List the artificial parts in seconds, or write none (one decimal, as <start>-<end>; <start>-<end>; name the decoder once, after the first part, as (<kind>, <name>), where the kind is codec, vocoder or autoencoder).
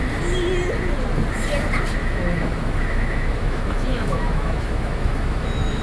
2.0-5.8 (autoencoder, DAC-VAE)